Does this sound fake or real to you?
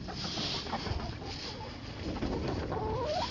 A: real